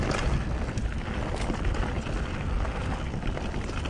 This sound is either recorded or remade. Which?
recorded